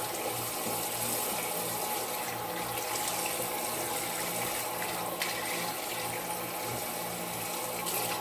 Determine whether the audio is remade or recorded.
recorded